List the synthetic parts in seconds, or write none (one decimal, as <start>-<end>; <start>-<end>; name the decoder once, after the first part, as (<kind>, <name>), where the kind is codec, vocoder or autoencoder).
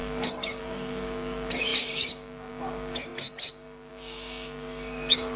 0.0-5.4 (codec, DAC)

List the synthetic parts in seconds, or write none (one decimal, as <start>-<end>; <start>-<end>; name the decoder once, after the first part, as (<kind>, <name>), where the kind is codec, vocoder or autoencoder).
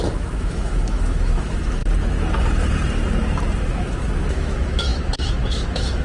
0.0-1.8 (autoencoder, DAC-VAE); 3.7-6.0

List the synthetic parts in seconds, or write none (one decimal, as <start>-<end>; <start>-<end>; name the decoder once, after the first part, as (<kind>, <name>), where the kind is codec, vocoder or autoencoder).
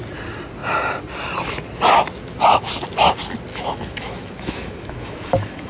3.5-5.7 (autoencoder, DAC-VAE)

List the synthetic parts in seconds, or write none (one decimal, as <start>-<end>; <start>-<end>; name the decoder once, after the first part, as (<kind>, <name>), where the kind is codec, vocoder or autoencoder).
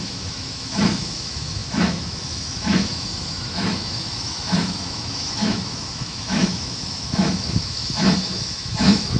0.0-9.2 (autoencoder, DAC-VAE)